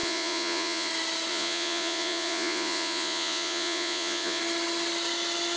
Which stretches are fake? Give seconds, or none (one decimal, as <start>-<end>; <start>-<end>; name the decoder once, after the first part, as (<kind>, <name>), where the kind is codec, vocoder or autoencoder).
0.0-0.9 (vocoder, Vocos); 1.3-4.4